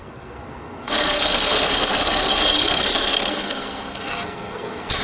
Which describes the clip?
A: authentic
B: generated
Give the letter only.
B